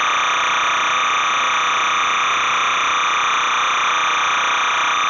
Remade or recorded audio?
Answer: recorded